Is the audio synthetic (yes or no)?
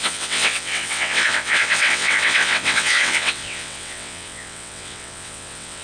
yes